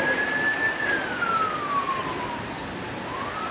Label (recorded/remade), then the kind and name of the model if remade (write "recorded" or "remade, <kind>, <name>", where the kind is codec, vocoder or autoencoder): recorded